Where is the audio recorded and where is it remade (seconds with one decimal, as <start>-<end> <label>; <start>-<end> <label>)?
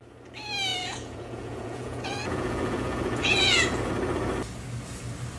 0.0-0.7 recorded; 0.7-3.9 remade; 3.9-5.4 recorded